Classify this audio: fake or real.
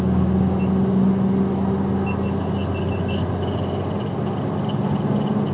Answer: real